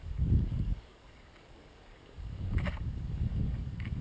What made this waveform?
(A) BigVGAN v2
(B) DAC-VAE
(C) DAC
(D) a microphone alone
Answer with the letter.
C